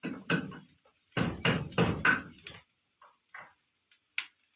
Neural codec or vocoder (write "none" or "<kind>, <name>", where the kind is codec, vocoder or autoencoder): none